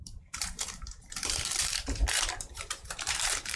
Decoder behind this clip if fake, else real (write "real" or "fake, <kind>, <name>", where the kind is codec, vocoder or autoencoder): fake, vocoder, BigVGAN v2